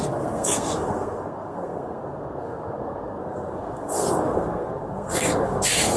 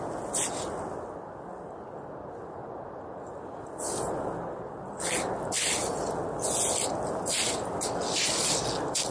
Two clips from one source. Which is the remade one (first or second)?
first